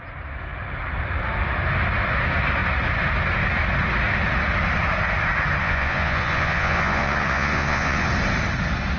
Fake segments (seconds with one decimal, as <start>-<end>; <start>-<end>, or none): 5.6-8.1